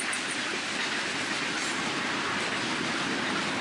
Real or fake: real